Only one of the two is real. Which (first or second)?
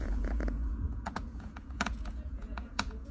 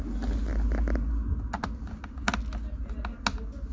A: second